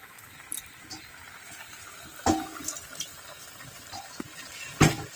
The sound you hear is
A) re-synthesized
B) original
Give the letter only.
B